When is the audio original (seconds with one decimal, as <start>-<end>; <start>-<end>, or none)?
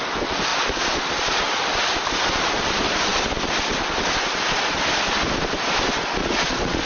0.0-0.5; 1.6-6.2